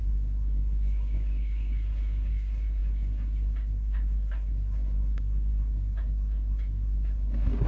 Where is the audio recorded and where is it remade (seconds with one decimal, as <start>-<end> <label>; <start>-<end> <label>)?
0.0-7.7 remade